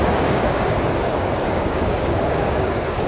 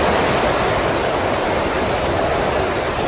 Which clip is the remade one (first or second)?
first